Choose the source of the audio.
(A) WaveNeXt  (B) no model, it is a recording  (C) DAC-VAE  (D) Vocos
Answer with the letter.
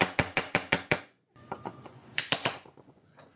D